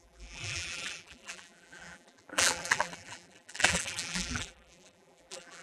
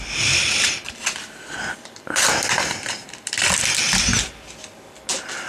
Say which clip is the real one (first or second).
second